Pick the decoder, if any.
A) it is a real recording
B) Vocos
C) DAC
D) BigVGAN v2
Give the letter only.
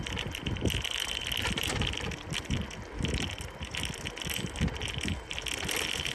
A